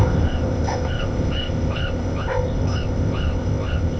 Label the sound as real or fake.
fake